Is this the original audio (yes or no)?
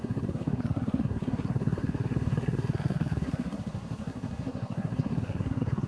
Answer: no